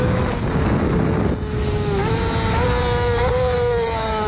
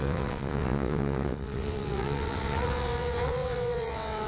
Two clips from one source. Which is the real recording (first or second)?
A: first